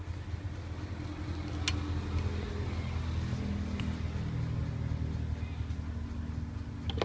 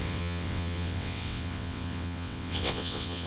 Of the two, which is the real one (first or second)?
first